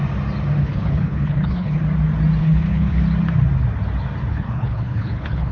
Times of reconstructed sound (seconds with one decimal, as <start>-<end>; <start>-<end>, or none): 0.6-1.8; 2.4-3.0; 4.3-5.5